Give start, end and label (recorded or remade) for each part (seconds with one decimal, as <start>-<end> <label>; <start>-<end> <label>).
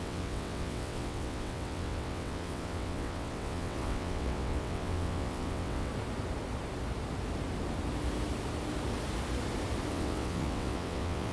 0.0-5.9 remade; 5.9-9.9 recorded; 9.9-11.3 remade